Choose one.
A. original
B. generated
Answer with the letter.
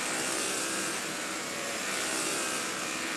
B